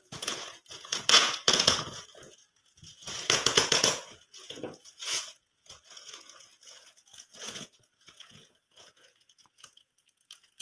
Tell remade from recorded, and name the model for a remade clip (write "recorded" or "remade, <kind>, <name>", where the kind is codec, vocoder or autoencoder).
remade, vocoder, Vocos